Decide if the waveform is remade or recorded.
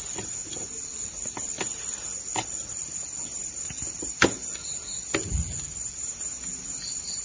recorded